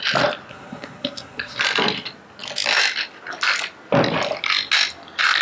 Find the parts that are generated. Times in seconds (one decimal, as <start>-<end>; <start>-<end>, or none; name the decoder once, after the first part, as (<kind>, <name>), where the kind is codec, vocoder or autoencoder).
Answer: 0.5-1.6 (codec, SNAC)